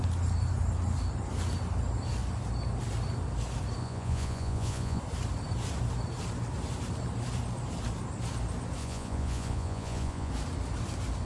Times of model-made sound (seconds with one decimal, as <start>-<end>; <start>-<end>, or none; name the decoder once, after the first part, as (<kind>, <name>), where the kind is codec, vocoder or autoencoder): 3.8-5.0 (vocoder, Vocos); 8.8-10.3